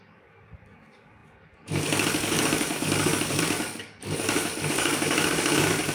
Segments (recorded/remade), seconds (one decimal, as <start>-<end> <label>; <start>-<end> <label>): 0.0-5.9 remade